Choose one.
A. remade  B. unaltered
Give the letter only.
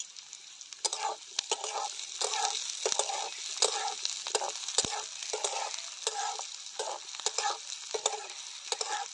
B